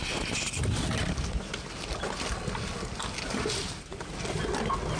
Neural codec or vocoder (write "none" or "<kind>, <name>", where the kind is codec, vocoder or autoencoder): none